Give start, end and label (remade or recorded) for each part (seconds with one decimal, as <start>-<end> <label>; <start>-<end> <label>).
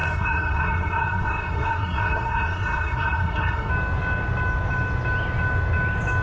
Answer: 0.0-3.7 remade; 3.7-6.2 recorded